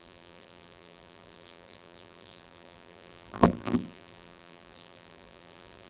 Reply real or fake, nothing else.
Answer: fake